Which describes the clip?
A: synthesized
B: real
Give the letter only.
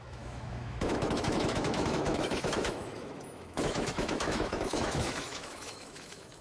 A